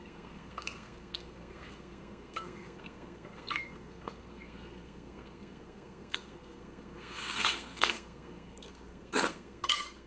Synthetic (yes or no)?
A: yes